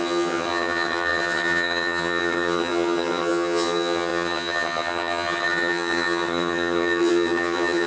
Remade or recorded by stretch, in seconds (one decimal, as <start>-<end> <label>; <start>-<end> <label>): 0.0-7.9 remade